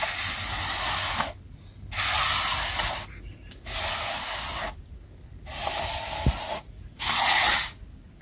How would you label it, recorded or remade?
recorded